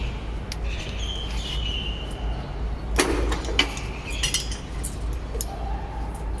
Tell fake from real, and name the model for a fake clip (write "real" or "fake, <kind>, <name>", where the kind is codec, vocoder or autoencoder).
real